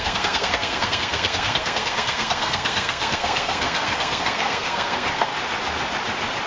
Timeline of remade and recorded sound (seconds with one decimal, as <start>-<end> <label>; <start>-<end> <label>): 0.0-5.3 remade; 5.3-6.5 recorded